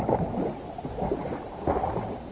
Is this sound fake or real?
real